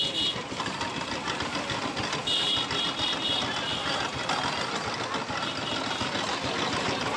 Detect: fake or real real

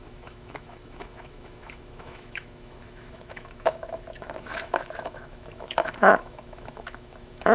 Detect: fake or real fake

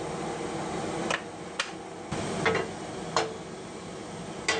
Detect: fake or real real